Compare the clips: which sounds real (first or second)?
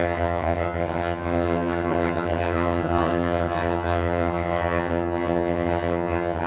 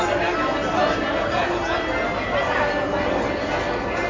second